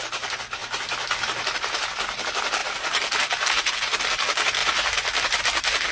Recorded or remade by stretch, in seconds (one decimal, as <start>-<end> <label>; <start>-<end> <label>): 0.0-0.6 recorded; 0.6-1.9 remade; 1.9-2.6 recorded; 2.6-3.7 remade; 3.7-4.6 recorded; 4.6-5.4 remade; 5.4-5.9 recorded